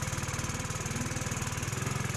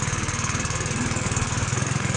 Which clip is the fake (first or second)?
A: second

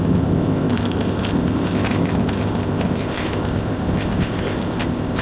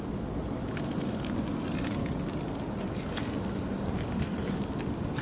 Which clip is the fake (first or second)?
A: first